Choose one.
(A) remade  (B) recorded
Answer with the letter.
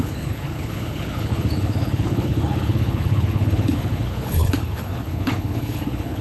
A